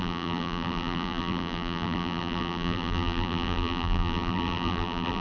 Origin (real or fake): fake